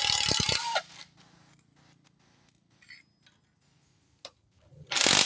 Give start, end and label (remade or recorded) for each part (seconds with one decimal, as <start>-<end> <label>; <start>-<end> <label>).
0.0-5.3 recorded